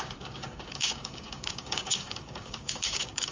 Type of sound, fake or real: fake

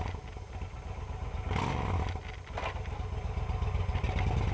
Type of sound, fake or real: real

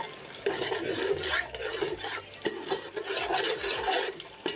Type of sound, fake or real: real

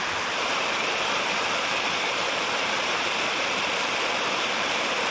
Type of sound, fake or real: fake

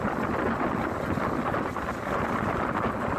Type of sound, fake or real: real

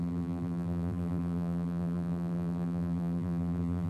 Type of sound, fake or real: fake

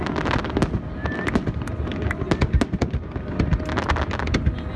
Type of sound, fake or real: real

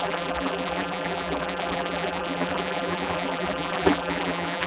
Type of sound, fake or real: fake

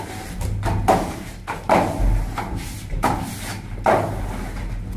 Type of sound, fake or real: real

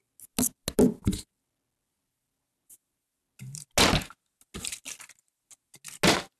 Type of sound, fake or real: real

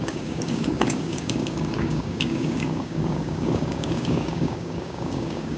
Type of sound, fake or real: fake